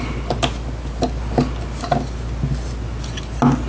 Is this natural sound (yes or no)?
yes